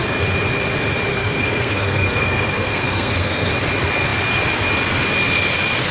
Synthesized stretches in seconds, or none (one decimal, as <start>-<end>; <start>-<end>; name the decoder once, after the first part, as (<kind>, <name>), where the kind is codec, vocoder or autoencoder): 1.1-3.5 (codec, SNAC)